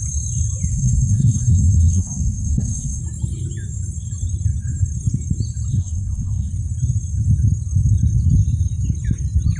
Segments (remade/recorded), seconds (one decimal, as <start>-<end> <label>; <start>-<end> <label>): 0.0-0.7 recorded; 0.7-3.0 remade; 3.0-5.7 recorded; 5.7-6.5 remade; 6.5-9.6 recorded